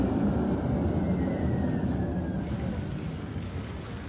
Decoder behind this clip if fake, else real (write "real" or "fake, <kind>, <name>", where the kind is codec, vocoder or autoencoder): real